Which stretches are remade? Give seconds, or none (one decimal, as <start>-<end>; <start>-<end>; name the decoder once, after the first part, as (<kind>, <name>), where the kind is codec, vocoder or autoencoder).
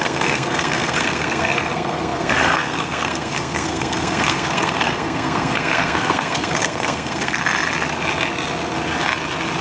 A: 0.0-7.4 (codec, SNAC)